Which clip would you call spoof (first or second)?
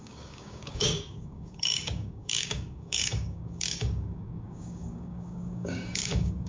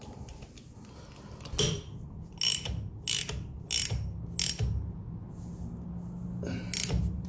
first